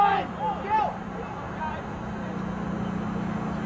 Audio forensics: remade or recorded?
recorded